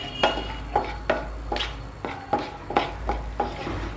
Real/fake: real